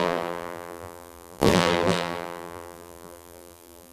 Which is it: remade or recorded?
remade